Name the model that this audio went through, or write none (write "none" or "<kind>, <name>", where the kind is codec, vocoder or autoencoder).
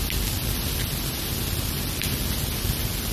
none